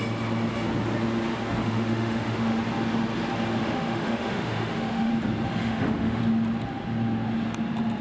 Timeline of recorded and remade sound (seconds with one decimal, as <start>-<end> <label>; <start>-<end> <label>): 0.0-1.6 recorded; 1.6-2.6 remade; 2.6-3.6 recorded; 3.6-5.1 remade; 5.1-5.6 recorded; 5.6-6.2 remade; 6.2-8.0 recorded